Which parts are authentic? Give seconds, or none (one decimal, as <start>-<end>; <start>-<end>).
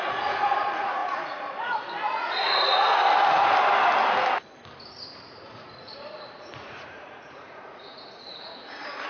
3.0-5.2